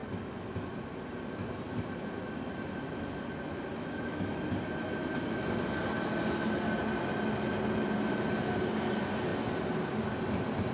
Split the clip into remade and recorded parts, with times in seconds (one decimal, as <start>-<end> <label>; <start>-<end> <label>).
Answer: 0.0-0.7 remade; 0.7-3.7 recorded; 3.7-4.5 remade; 4.5-10.7 recorded